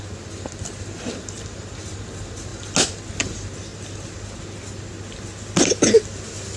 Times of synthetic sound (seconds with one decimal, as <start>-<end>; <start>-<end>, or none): none